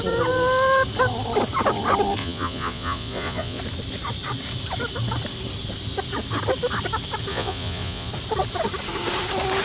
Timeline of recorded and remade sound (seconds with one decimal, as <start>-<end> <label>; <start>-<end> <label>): 0.0-2.2 recorded; 2.2-3.6 remade; 3.6-7.3 recorded; 7.3-8.1 remade; 8.1-9.6 recorded